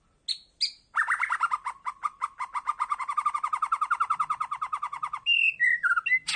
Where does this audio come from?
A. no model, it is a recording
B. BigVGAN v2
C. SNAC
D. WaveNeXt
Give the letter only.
A